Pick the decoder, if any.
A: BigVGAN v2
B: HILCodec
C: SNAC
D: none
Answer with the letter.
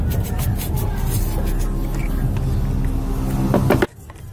D